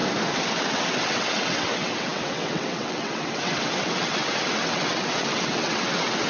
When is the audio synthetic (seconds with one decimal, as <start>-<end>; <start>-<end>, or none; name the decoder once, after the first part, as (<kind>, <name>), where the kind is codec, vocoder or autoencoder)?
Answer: 0.6-6.3 (vocoder, WaveNeXt)